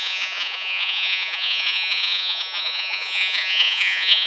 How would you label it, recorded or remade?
remade